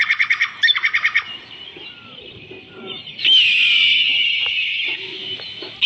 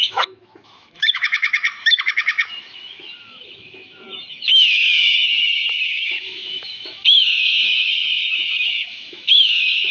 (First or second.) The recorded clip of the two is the first